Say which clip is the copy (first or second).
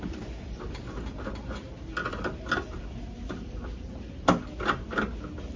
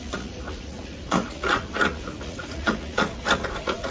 second